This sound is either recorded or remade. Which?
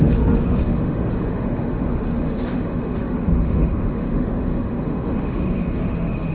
remade